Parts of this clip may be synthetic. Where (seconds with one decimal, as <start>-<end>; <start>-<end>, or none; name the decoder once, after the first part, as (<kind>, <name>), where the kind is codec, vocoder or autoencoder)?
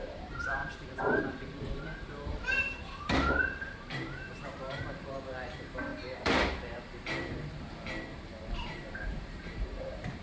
0.0-0.6 (vocoder, BigVGAN v2); 1.2-10.2